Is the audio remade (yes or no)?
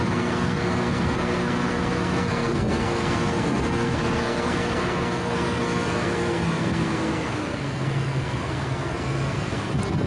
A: yes